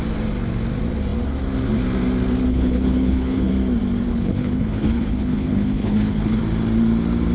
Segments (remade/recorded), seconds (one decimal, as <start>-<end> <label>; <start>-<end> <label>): 0.0-2.5 recorded; 2.5-3.5 remade; 3.5-4.1 recorded; 4.1-6.4 remade; 6.4-7.3 recorded